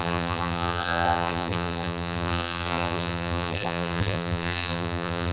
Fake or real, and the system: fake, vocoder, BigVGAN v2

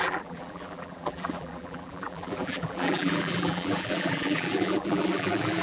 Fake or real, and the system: fake, vocoder, BigVGAN v2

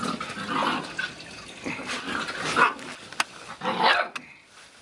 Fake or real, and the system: real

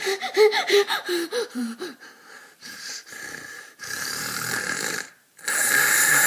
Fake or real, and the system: fake, vocoder, BigVGAN v2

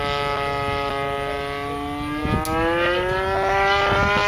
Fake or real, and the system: real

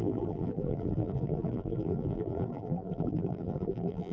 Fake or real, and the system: fake, vocoder, BigVGAN v2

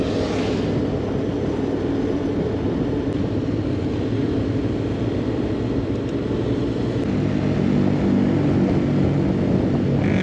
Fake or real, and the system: real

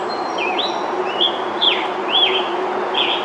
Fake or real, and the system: real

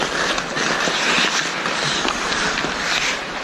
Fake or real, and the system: real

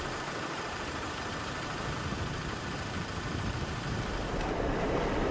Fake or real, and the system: fake, vocoder, BigVGAN v2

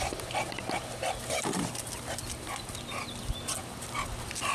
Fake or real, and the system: real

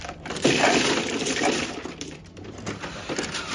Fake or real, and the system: fake, vocoder, BigVGAN v2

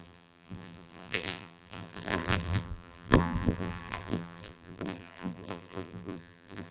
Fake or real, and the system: fake, vocoder, BigVGAN v2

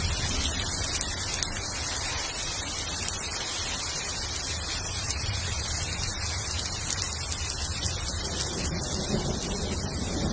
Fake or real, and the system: real